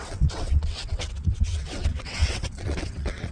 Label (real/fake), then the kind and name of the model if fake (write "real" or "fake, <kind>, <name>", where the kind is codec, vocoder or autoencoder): fake, vocoder, WaveNeXt